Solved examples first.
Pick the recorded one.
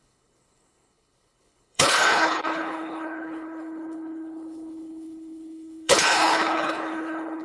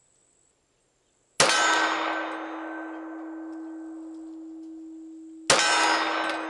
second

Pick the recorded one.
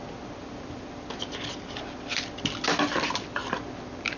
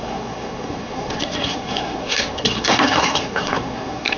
first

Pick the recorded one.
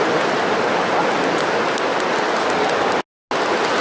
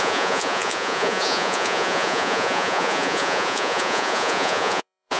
first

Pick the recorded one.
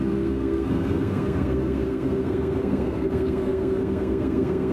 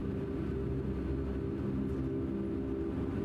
second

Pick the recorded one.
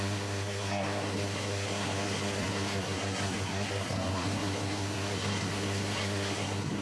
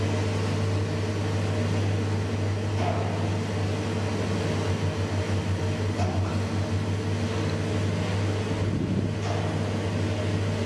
second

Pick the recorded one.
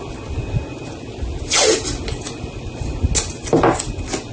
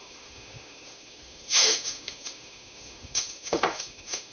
first